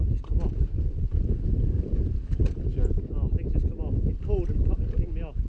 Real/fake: real